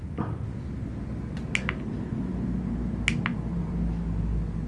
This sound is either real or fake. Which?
real